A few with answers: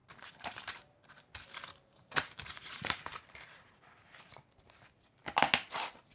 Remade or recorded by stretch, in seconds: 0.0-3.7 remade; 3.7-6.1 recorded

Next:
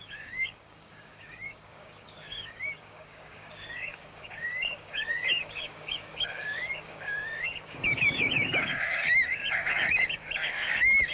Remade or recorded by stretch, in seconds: 0.0-11.1 remade

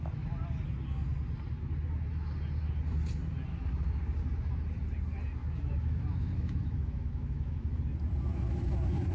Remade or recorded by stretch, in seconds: 0.0-3.5 recorded; 3.5-4.2 remade; 4.2-5.4 recorded; 5.4-7.8 remade; 7.8-8.3 recorded; 8.3-9.1 remade